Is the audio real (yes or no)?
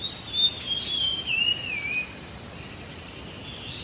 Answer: yes